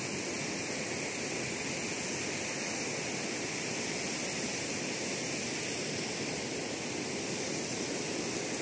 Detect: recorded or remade recorded